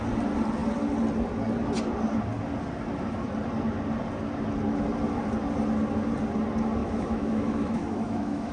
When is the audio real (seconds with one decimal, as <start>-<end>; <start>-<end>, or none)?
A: 0.0-6.8